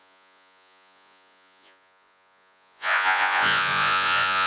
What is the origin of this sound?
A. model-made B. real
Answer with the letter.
A